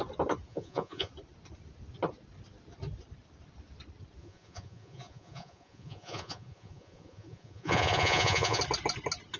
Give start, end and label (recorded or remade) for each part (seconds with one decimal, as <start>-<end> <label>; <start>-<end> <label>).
0.0-0.5 recorded; 0.5-1.1 remade; 1.1-4.2 recorded; 4.2-8.6 remade; 8.6-9.4 recorded